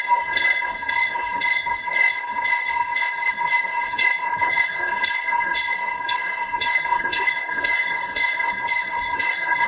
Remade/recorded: remade